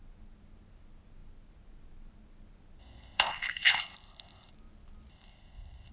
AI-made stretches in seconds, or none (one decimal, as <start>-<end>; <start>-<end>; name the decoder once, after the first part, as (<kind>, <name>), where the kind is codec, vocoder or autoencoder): 2.8-4.5 (codec, ZipCodec); 5.1-5.9